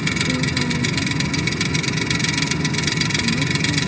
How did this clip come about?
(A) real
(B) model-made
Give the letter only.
A